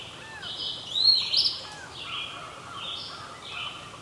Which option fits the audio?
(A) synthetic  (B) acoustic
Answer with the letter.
B